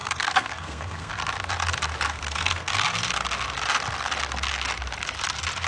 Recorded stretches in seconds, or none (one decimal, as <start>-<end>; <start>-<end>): 1.1-2.1; 2.7-5.7